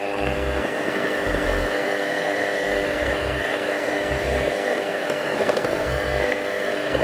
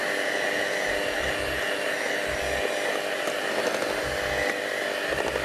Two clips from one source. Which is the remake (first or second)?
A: first